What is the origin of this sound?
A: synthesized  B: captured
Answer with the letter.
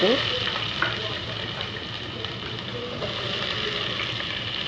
B